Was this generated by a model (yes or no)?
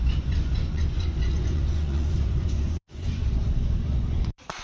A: yes